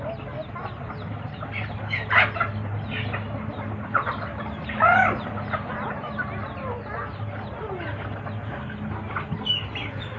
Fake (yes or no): no